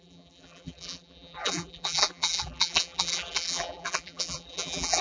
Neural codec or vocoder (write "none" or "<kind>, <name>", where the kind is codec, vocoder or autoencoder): vocoder, BigVGAN v2